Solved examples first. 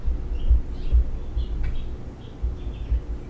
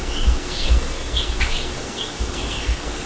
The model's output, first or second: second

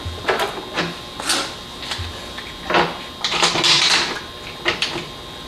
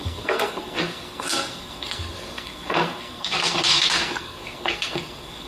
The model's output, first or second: second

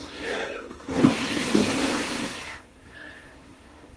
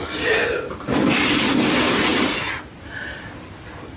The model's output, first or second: first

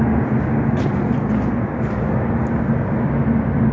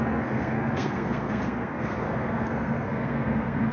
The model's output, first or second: second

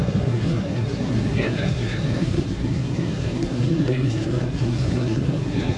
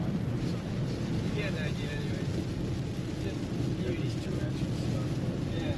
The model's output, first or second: first